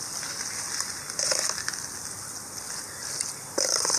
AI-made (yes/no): no